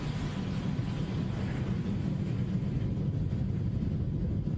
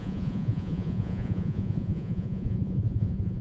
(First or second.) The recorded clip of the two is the first